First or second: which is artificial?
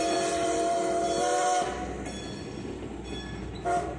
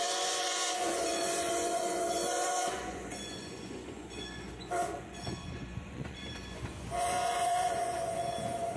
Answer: second